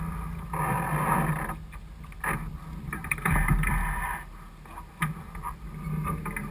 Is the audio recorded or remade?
recorded